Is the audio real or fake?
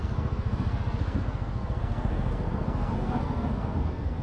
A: fake